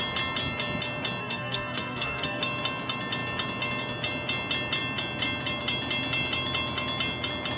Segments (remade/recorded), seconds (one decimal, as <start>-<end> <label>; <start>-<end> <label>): 0.0-1.2 recorded; 1.2-2.4 remade; 2.4-7.6 recorded